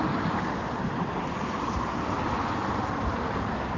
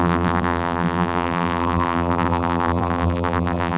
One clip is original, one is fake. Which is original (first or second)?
first